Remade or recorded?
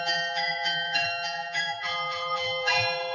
remade